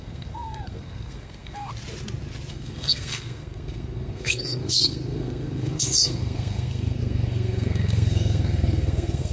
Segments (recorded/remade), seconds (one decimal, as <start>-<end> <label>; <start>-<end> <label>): 0.0-1.7 remade; 1.7-2.5 recorded; 2.5-9.3 remade